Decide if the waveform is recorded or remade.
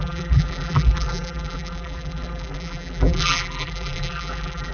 remade